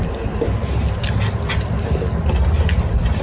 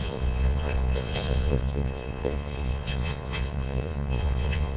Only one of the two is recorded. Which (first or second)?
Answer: first